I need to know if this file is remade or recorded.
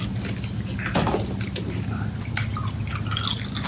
recorded